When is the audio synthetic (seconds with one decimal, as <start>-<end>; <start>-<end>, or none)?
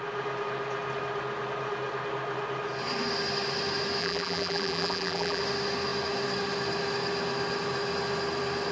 4.0-5.4